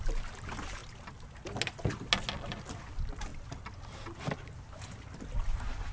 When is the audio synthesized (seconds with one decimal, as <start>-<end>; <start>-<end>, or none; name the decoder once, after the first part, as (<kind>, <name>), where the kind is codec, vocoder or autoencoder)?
none